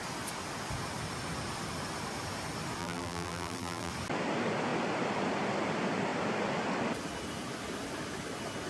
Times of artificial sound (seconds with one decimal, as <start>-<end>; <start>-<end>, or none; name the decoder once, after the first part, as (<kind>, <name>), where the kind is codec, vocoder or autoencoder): 2.8-3.9 (vocoder, BigVGAN v2)